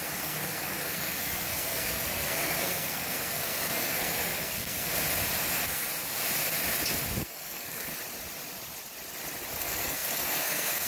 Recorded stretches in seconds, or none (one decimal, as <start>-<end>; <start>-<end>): 4.9-5.4; 5.9-7.2; 7.9-9.6